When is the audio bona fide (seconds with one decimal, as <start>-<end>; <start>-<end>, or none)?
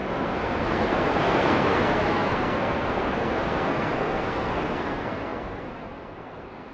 none